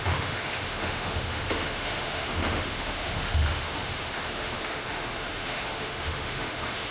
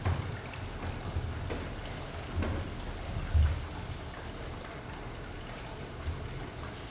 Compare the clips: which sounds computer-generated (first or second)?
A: first